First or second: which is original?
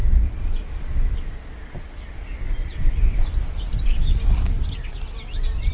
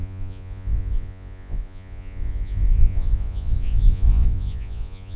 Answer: first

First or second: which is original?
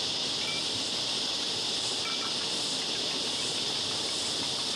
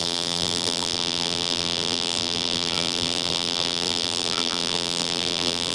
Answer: first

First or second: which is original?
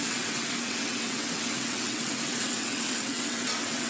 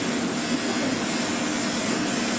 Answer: second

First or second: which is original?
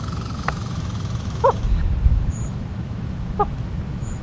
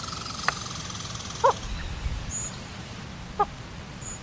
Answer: second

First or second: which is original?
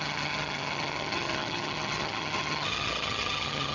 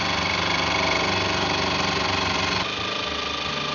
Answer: second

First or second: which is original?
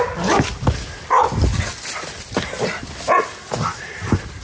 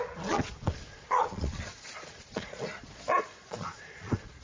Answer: first